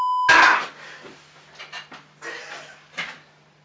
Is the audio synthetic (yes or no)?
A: no